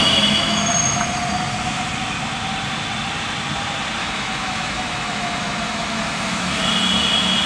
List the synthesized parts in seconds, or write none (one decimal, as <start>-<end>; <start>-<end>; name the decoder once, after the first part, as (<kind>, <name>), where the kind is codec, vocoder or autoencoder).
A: 0.0-0.7 (autoencoder, DAC-VAE); 4.0-6.6